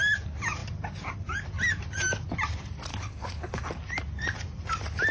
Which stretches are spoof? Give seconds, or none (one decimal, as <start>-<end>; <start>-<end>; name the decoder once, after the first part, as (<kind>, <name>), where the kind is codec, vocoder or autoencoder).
2.9-3.6 (codec, HILCodec)